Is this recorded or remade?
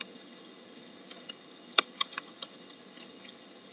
remade